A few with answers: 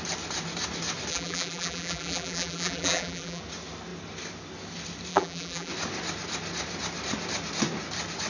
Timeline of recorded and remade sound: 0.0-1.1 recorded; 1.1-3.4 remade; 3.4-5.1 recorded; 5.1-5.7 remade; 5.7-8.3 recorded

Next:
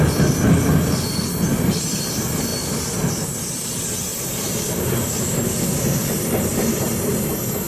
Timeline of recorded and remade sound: 0.0-6.5 recorded; 6.5-7.1 remade; 7.1-7.7 recorded

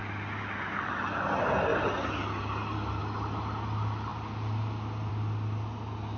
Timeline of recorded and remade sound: 0.0-6.2 recorded

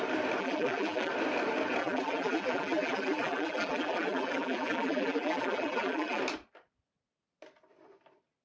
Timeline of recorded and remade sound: 0.0-0.4 recorded; 0.4-1.1 remade; 1.1-1.8 recorded; 1.8-6.2 remade; 6.2-8.4 recorded